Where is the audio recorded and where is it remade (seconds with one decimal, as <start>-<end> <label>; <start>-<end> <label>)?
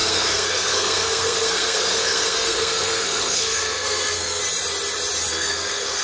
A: 0.0-4.4 remade; 4.4-5.3 recorded; 5.3-6.0 remade